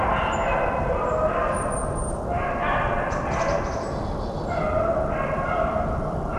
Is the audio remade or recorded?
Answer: recorded